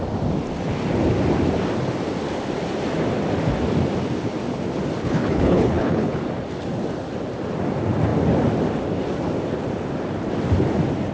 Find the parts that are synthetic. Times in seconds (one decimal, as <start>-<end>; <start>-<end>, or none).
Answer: 5.0-6.2